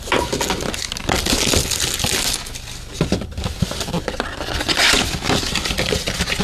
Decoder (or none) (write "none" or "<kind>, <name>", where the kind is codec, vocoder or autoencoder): none